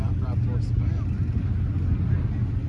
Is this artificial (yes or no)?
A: no